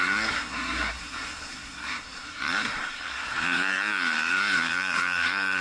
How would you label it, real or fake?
fake